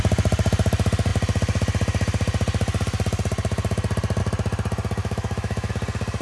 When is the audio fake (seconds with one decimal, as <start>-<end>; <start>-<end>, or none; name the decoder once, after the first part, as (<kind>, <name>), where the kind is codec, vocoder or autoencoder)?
5.0-5.7 (autoencoder, DAC-VAE)